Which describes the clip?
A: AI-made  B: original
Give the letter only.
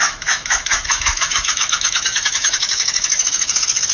A